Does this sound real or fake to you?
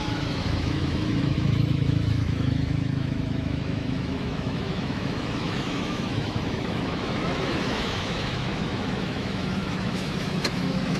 fake